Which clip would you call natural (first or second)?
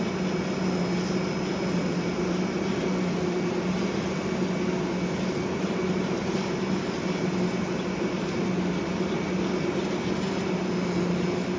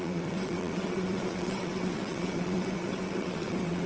first